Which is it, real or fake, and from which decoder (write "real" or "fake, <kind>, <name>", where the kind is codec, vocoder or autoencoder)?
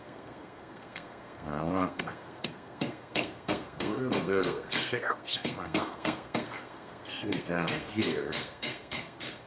fake, codec, SNAC